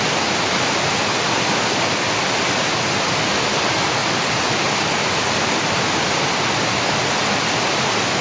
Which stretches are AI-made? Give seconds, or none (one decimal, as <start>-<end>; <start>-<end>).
none